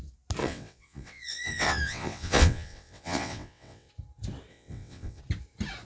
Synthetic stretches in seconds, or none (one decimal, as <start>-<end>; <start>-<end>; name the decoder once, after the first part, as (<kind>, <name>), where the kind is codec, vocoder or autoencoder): 0.4-3.9 (vocoder, WaveNeXt); 4.5-5.2